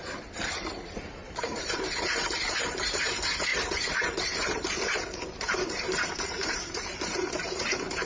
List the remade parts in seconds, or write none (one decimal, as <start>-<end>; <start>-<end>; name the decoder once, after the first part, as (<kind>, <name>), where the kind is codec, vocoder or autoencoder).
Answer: 0.0-8.1 (vocoder, BigVGAN v2)

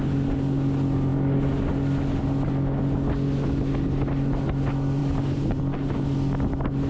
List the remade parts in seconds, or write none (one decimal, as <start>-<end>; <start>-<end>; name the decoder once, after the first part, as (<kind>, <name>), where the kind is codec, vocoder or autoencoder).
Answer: 5.0-5.6 (vocoder, BigVGAN v2)